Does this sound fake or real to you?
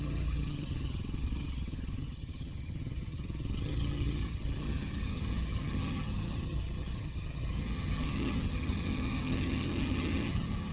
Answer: fake